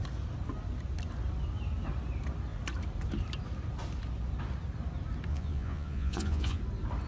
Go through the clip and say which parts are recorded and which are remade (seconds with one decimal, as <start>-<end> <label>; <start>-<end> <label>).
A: 0.0-5.3 recorded; 5.3-6.6 remade; 6.6-7.1 recorded